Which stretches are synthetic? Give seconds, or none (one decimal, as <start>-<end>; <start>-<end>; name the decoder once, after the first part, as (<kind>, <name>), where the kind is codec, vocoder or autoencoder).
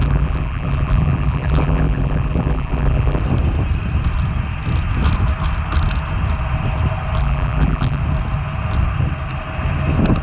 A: 0.0-3.2 (vocoder, BigVGAN v2); 7.2-8.0